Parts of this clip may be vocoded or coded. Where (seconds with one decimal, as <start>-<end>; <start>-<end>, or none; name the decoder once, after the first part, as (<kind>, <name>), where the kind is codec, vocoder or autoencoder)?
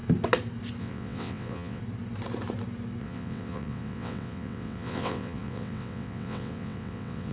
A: 0.8-1.8 (vocoder, WaveNeXt); 3.0-7.3